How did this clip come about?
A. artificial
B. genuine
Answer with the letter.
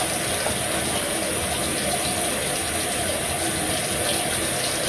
B